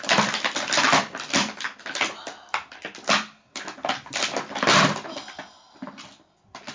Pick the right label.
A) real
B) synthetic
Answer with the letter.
A